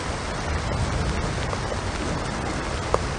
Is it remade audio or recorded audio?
recorded